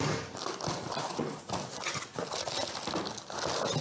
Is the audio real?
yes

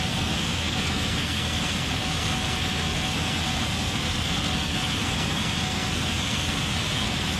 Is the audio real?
no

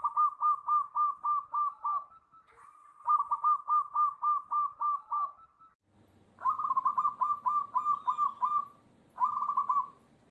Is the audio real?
yes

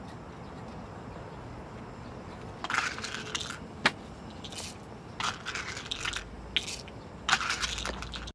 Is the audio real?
yes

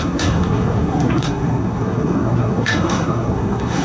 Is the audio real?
no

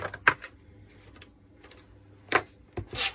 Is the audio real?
yes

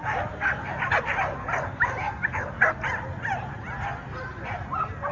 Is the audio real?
yes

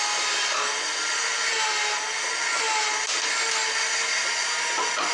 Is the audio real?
yes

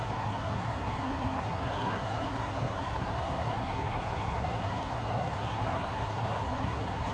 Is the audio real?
no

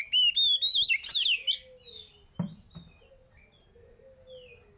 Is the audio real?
yes